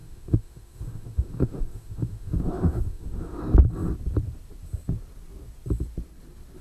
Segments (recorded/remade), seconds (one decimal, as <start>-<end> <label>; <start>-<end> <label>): 0.0-3.4 remade; 3.4-6.6 recorded